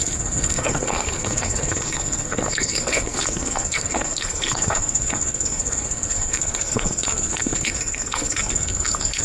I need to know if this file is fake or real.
fake